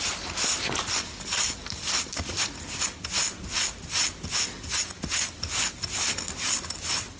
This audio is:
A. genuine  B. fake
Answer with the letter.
A